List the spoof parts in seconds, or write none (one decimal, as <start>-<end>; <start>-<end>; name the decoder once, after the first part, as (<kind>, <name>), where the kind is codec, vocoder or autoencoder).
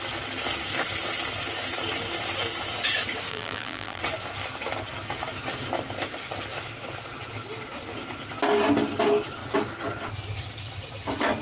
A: 3.3-4.0 (vocoder, BigVGAN v2)